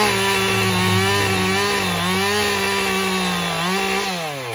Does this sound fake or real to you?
real